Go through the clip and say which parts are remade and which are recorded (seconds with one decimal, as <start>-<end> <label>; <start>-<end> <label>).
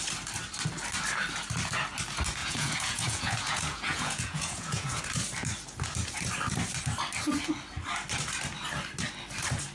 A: 0.0-2.4 recorded; 2.4-5.0 remade; 5.0-9.7 recorded